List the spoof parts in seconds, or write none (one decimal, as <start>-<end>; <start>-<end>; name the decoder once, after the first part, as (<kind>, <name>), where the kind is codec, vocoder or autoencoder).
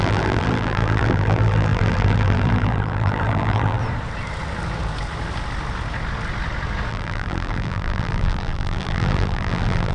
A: 0.0-3.8 (vocoder, BigVGAN v2); 6.9-9.9